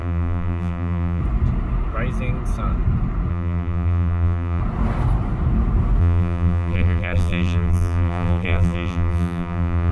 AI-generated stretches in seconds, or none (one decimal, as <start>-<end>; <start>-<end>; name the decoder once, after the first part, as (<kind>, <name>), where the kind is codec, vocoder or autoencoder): 0.0-1.2 (vocoder, BigVGAN v2); 3.3-4.6; 6.0-9.9